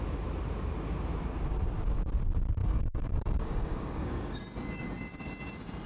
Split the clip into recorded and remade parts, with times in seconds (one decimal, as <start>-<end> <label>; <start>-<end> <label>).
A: 0.0-2.6 recorded; 2.6-4.4 remade; 4.4-5.9 recorded